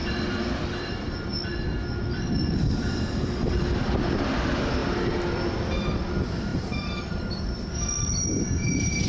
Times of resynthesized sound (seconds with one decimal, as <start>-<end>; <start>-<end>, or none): 0.0-1.3; 2.3-4.8; 5.9-6.5; 7.1-9.1